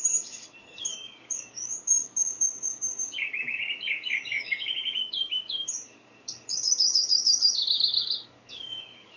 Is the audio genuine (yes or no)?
no